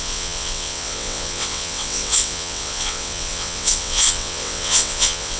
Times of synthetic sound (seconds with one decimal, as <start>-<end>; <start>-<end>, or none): 0.0-5.4